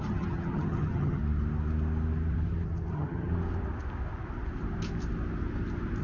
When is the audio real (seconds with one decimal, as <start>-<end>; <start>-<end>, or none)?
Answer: 1.2-2.9; 3.3-6.0